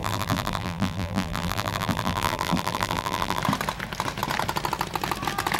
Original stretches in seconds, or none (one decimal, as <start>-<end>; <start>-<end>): 3.4-5.6